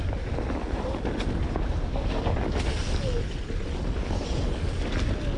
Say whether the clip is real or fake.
real